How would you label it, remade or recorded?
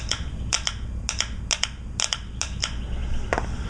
recorded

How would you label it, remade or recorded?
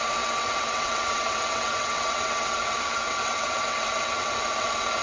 remade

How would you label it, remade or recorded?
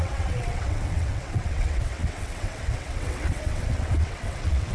remade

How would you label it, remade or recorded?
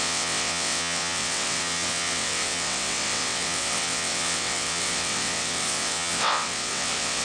remade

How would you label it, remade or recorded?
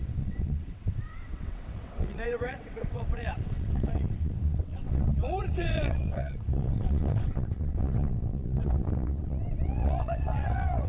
remade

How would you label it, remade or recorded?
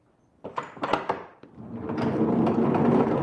recorded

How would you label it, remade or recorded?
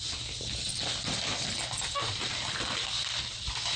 recorded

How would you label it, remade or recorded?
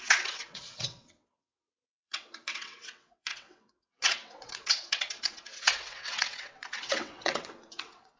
remade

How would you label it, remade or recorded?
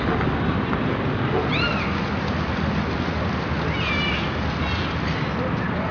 recorded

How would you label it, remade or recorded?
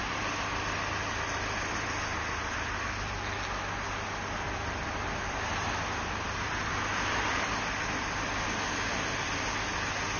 recorded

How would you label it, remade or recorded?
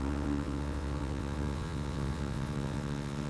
remade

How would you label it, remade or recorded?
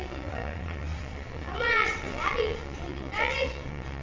remade